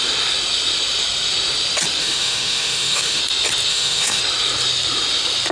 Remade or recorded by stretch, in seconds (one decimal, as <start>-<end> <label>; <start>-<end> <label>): 0.0-2.0 recorded; 2.0-3.2 remade; 3.2-3.7 recorded; 3.7-4.2 remade; 4.2-5.5 recorded